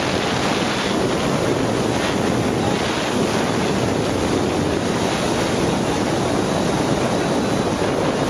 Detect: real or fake real